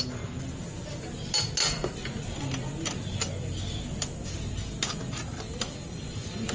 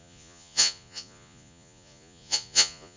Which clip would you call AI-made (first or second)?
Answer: second